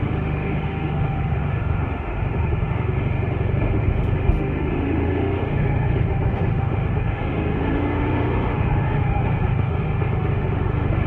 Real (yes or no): no